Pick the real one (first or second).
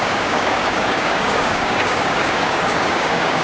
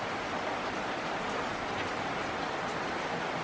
second